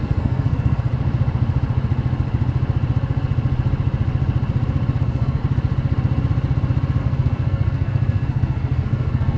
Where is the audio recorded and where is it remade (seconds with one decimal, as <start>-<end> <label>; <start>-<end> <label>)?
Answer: 0.0-0.9 remade; 0.9-5.0 recorded; 5.0-5.4 remade; 5.4-7.0 recorded; 7.0-9.4 remade